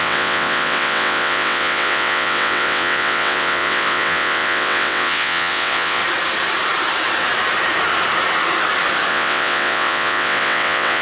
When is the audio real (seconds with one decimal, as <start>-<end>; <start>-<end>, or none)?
6.0-9.1